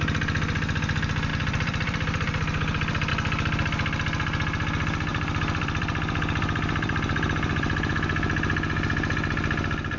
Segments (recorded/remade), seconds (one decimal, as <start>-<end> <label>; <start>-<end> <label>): 0.0-1.3 recorded; 1.3-3.1 remade; 3.1-5.1 recorded; 5.1-7.9 remade; 7.9-10.0 recorded